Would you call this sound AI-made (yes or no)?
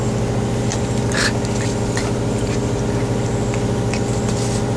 no